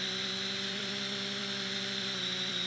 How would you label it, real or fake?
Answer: fake